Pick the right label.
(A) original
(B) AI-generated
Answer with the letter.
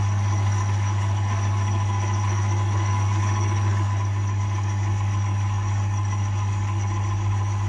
B